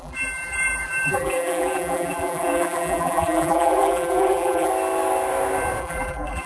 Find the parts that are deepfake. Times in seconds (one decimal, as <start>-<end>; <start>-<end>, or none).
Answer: 0.0-4.7; 5.8-6.5